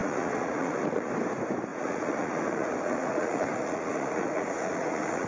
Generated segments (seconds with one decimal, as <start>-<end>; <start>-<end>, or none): 0.0-1.1; 1.7-5.3